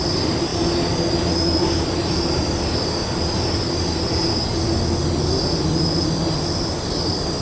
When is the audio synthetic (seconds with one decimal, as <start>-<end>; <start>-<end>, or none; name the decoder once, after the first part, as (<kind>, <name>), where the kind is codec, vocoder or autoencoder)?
0.0-0.5 (vocoder, BigVGAN v2); 1.8-3.0; 6.3-7.4